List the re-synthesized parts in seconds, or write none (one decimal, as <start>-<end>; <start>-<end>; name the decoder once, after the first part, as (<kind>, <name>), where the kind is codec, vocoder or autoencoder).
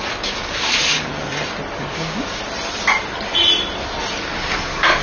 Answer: 0.0-1.1 (codec, DAC); 1.8-2.4; 4.2-5.0